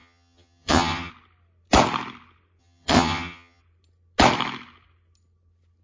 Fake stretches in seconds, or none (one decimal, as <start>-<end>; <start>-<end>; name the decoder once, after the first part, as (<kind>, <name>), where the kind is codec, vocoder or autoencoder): 0.0-1.1 (vocoder, HiFi-GAN); 2.6-3.6